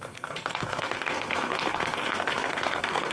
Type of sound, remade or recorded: remade